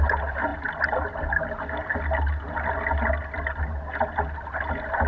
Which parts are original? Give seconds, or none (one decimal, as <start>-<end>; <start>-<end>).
0.0-5.1